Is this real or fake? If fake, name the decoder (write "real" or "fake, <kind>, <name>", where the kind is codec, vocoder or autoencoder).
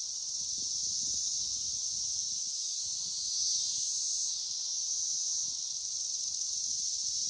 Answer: real